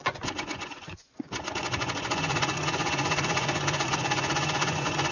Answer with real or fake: fake